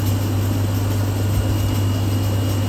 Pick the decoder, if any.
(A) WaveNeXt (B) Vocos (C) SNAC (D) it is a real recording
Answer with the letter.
D